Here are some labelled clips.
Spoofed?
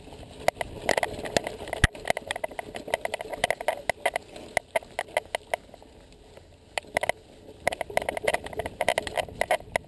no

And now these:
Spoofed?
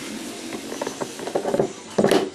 no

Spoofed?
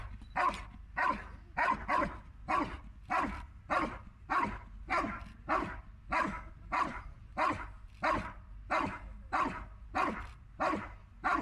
no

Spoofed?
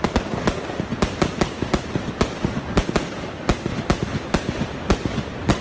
no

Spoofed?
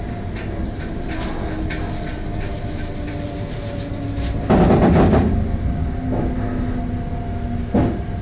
no